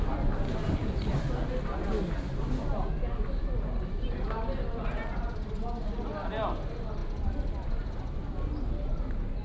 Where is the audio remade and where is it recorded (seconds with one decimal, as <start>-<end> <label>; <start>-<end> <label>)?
0.0-9.4 recorded